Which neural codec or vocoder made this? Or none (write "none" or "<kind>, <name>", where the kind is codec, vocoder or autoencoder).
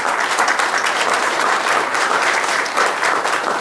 vocoder, BigVGAN v2